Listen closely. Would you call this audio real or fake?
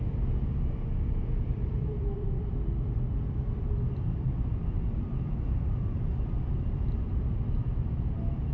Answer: fake